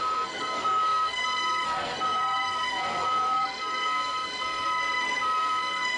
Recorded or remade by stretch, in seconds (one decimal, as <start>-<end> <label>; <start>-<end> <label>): 0.0-6.0 remade